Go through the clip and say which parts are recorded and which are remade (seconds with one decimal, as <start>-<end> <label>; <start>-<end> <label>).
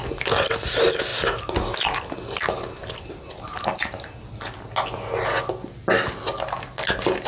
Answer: 0.0-7.3 recorded